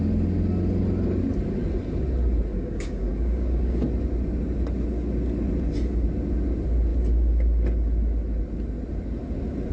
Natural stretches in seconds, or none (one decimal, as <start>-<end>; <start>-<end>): 0.0-2.5; 3.8-9.7